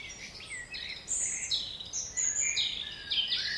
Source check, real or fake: real